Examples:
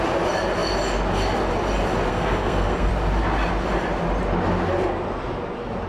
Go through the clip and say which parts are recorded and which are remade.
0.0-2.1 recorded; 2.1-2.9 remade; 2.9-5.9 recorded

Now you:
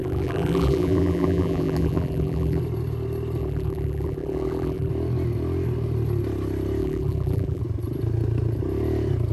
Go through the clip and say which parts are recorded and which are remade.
0.0-2.6 remade; 2.6-3.4 recorded; 3.4-4.9 remade; 4.9-6.8 recorded; 6.8-7.6 remade; 7.6-9.3 recorded

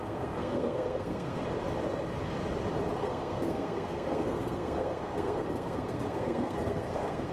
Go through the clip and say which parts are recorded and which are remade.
0.0-1.4 remade; 1.4-3.0 recorded; 3.0-7.3 remade

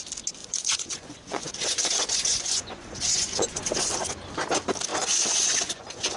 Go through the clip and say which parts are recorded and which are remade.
0.0-0.4 recorded; 0.4-4.1 remade; 4.1-4.9 recorded; 4.9-6.2 remade